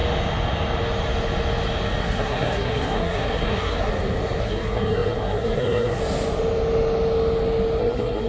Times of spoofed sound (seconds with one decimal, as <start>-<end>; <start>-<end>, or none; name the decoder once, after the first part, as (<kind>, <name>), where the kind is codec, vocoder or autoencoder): 2.0-3.9 (codec, SNAC); 4.4-6.0; 7.8-8.3